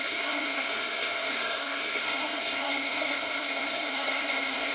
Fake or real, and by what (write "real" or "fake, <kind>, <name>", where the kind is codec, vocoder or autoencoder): fake, codec, SNAC